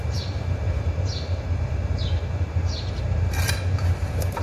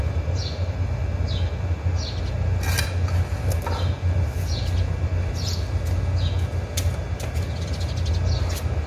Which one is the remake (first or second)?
first